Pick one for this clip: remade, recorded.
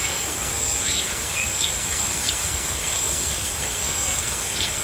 remade